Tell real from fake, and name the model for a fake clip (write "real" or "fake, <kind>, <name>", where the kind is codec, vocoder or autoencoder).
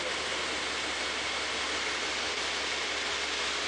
real